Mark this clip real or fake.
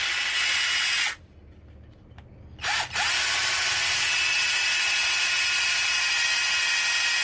real